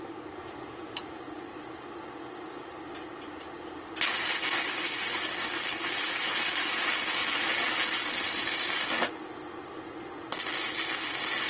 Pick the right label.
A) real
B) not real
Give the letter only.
A